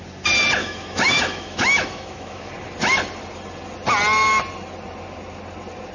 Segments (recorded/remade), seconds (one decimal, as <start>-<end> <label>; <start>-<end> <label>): 0.0-0.6 recorded; 0.6-2.5 remade; 2.5-5.9 recorded